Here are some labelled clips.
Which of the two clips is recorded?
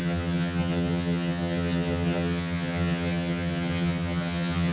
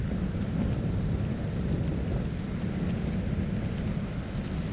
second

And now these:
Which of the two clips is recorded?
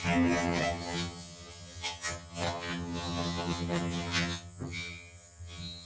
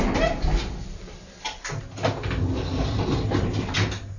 second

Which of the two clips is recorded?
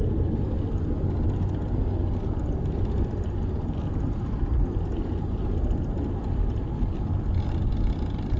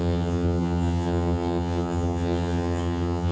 first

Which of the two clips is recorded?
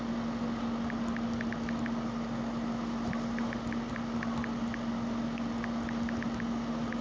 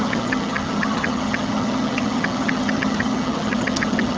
first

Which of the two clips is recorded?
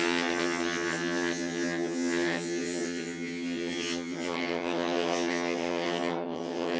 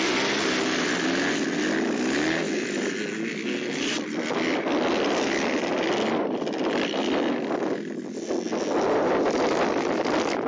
second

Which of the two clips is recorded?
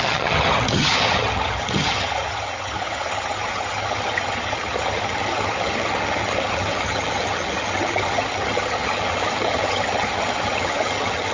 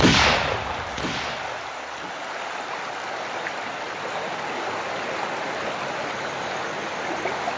second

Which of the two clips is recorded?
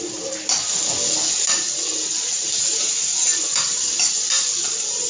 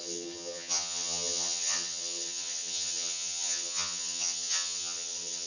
first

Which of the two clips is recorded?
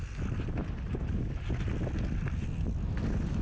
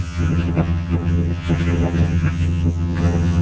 first